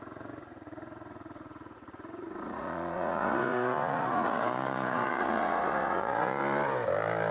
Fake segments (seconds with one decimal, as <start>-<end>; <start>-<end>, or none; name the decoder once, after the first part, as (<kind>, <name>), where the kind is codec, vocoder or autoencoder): 0.0-6.4 (vocoder, Vocos)